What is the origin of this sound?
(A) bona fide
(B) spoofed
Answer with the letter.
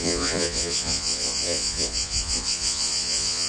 B